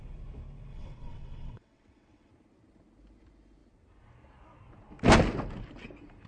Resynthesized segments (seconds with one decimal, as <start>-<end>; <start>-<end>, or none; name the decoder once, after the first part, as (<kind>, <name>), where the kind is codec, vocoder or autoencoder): 0.7-2.3 (vocoder, WaveNeXt)